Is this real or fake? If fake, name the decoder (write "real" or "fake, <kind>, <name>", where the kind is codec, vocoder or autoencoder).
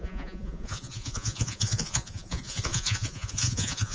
fake, vocoder, Vocos